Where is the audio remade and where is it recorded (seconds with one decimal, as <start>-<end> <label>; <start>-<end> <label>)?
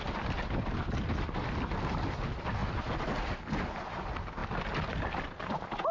0.0-5.9 recorded